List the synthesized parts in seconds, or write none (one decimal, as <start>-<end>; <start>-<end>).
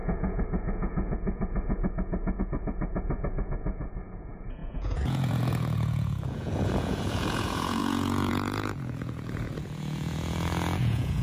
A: 0.0-11.2